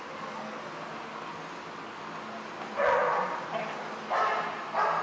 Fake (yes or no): no